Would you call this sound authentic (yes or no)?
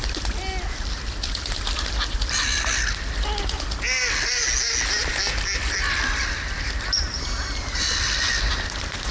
yes